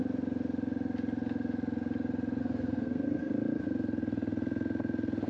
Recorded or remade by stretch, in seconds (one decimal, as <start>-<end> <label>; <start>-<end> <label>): 0.0-2.4 recorded; 2.4-3.3 remade; 3.3-5.3 recorded